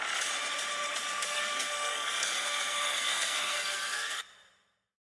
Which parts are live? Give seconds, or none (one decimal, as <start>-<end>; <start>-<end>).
0.0-1.1; 4.2-5.1